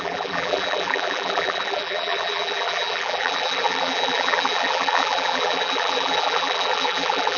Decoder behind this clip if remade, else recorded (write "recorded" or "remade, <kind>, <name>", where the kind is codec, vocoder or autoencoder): remade, vocoder, BigVGAN v2